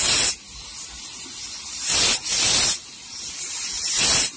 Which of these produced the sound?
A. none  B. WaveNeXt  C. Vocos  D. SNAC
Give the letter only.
A